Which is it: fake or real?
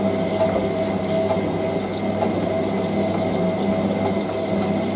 real